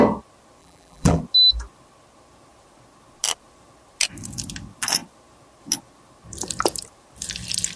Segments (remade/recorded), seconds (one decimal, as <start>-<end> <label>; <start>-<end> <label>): 0.0-0.6 recorded; 0.6-1.2 remade; 1.2-7.8 recorded